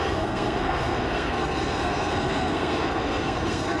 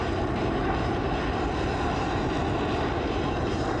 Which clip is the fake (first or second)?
first